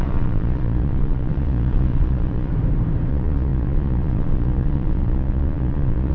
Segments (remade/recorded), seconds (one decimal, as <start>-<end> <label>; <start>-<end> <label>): 0.0-2.5 remade; 2.5-3.1 recorded; 3.1-6.1 remade